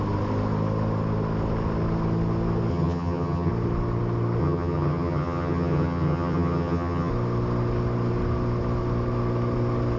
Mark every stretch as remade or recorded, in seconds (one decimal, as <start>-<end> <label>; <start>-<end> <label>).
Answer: 0.0-2.7 recorded; 2.7-3.5 remade; 3.5-4.4 recorded; 4.4-7.1 remade; 7.1-10.0 recorded